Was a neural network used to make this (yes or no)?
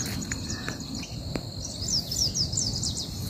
no